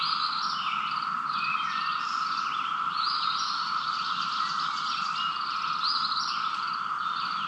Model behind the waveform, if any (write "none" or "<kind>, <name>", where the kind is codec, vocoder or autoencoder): none